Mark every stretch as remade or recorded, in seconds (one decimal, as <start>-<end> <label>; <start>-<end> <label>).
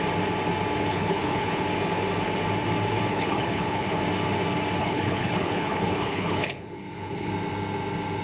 0.0-0.9 recorded; 0.9-1.6 remade; 1.6-3.1 recorded; 3.1-4.0 remade; 4.0-4.8 recorded; 4.8-7.3 remade; 7.3-8.2 recorded